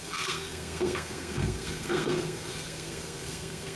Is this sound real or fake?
fake